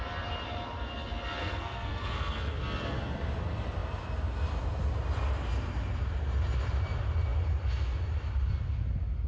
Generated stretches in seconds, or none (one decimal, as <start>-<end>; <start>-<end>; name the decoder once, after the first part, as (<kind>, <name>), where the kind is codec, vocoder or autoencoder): 1.4-2.6 (codec, SNAC)